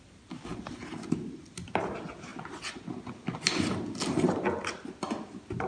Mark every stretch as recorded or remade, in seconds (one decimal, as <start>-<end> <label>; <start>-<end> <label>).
0.0-5.7 recorded